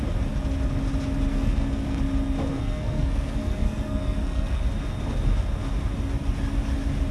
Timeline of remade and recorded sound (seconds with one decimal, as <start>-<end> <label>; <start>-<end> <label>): 0.0-1.3 recorded; 1.3-2.0 remade; 2.0-2.5 recorded; 2.5-4.6 remade; 4.6-7.1 recorded